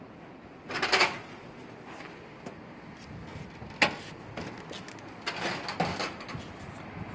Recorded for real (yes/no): yes